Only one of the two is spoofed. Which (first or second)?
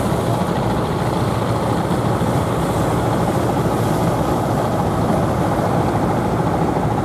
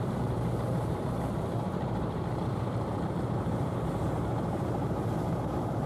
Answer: second